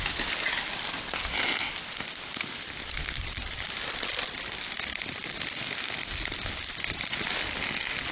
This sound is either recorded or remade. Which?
recorded